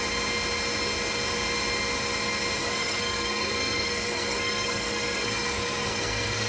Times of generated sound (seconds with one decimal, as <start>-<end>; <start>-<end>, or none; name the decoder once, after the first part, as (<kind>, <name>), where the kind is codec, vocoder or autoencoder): 2.6-6.5 (codec, SNAC)